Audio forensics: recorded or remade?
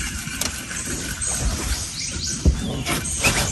remade